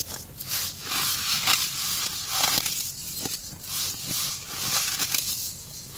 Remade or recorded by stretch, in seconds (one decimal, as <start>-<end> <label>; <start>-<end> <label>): 0.0-1.4 remade; 1.4-5.0 recorded; 5.0-6.0 remade